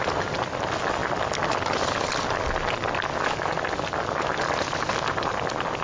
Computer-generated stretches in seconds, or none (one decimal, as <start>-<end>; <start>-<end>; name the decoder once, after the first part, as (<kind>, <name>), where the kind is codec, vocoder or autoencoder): none